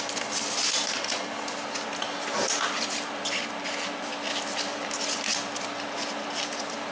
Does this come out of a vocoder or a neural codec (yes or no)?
no